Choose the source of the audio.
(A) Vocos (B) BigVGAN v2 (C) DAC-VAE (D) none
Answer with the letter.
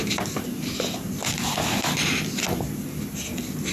D